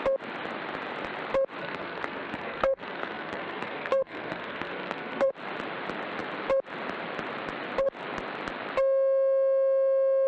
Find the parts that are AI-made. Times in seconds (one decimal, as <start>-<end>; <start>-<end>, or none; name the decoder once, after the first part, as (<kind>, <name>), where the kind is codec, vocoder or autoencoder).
1.6-5.3 (codec, SNAC)